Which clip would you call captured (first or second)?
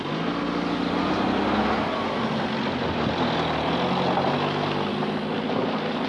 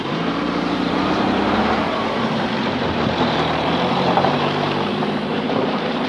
first